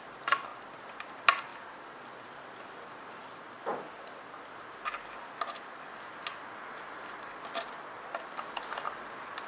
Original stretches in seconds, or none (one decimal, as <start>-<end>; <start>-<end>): 0.0-9.5

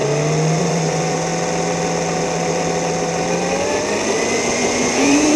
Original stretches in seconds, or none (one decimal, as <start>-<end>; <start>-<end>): 0.0-0.6; 1.3-4.5

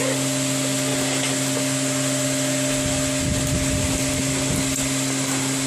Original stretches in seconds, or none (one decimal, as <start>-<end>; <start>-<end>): 0.0-5.7

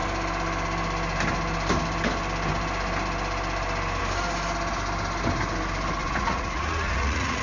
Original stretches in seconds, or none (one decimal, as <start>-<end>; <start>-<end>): 0.0-6.0